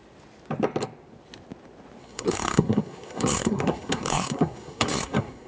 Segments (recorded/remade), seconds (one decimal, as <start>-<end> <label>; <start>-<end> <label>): 0.0-2.0 recorded; 2.0-5.5 remade

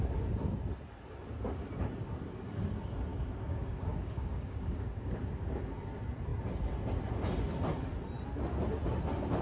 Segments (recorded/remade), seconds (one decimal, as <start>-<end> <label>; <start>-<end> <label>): 0.0-3.1 recorded; 3.1-5.8 remade; 5.8-9.4 recorded

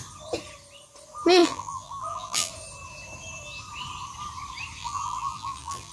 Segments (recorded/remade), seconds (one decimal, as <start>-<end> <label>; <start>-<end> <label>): 0.0-1.4 recorded; 1.4-2.5 remade; 2.5-4.8 recorded; 4.8-5.9 remade